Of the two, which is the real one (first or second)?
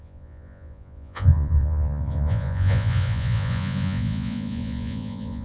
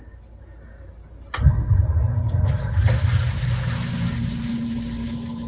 second